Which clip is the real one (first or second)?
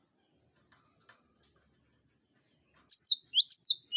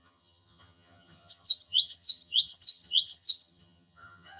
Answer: first